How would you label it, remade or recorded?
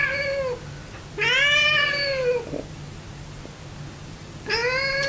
recorded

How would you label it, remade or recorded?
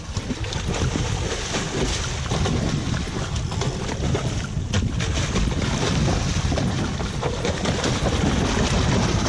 recorded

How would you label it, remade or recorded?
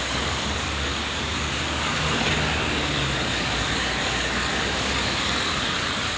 remade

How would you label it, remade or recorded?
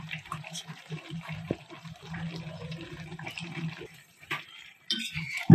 remade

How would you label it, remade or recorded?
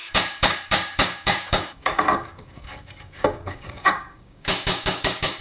remade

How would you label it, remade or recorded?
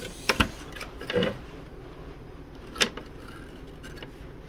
recorded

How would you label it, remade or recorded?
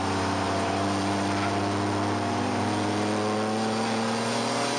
recorded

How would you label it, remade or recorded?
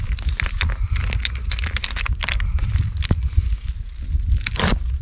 recorded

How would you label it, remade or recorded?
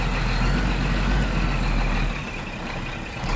recorded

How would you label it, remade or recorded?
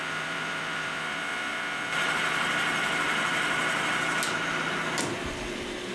recorded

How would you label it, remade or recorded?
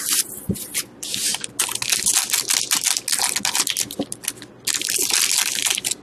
recorded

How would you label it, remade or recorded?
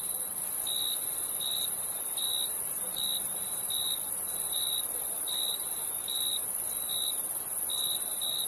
recorded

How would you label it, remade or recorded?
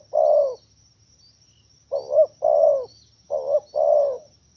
recorded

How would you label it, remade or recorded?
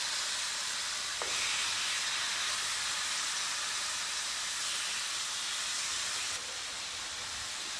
recorded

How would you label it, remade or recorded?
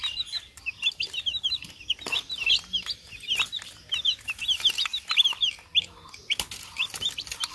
recorded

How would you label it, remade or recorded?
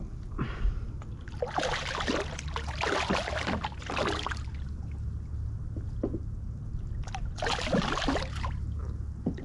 recorded